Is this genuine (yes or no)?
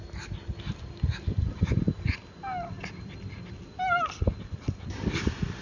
yes